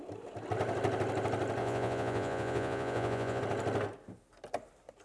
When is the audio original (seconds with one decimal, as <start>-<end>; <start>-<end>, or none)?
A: 0.0-1.6; 3.4-5.0